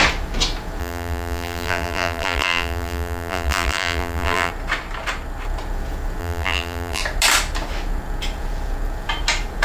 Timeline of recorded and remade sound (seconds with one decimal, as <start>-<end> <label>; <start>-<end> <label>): 0.0-0.8 recorded; 0.8-4.5 remade; 4.5-6.2 recorded; 6.2-7.0 remade; 7.0-9.6 recorded